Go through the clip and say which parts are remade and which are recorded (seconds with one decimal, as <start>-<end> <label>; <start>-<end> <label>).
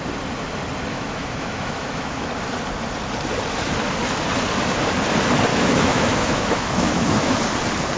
0.0-0.9 recorded; 0.9-2.3 remade; 2.3-5.5 recorded; 5.5-7.4 remade; 7.4-8.0 recorded